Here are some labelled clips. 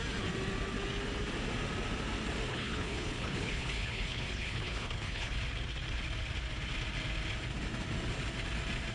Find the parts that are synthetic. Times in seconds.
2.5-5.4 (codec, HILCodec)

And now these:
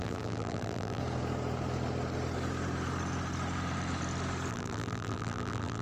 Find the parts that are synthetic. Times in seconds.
0.0-1.0 (vocoder, BigVGAN v2); 4.5-5.8

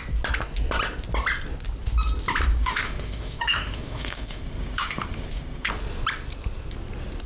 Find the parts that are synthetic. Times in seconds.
2.6-5.7 (autoencoder, DAC-VAE)

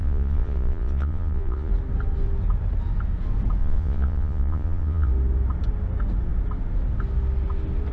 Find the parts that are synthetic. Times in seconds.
0.0-1.7 (vocoder, Vocos); 3.6-5.1

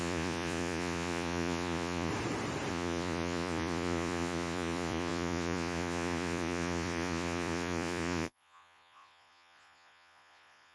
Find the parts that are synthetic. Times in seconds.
0.0-2.1 (vocoder, Vocos); 2.7-10.7

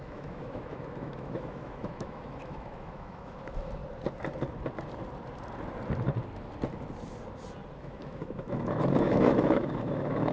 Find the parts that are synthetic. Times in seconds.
0.0-3.8 (autoencoder, DAC-VAE); 7.8-10.3